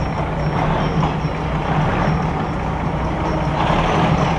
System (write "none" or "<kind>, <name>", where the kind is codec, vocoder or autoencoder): none